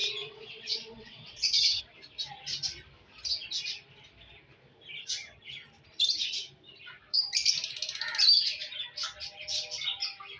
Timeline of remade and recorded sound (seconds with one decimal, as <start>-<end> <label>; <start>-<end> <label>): 0.0-1.8 remade; 1.8-10.4 recorded